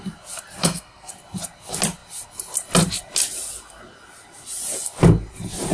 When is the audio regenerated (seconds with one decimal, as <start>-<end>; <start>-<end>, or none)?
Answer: 0.6-1.1